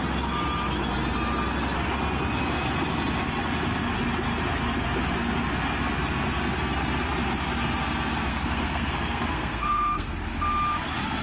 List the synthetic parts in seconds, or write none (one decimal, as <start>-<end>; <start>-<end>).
8.3-10.1